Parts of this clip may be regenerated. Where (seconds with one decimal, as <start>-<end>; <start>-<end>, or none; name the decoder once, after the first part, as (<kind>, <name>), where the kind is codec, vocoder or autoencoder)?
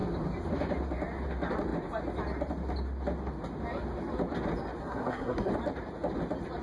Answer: 4.8-5.5 (codec, SNAC)